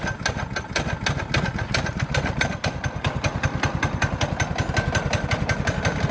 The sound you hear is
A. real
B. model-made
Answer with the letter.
A